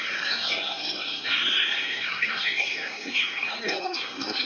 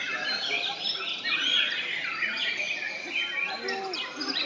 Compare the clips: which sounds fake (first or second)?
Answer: first